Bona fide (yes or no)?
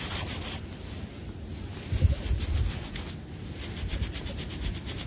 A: yes